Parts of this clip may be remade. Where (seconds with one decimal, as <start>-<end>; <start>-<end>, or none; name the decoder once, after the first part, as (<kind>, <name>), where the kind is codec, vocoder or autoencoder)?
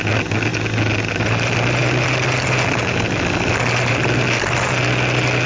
none